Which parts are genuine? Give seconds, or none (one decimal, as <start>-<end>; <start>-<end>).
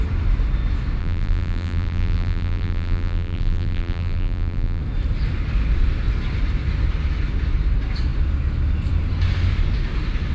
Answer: 0.0-1.0; 4.8-10.3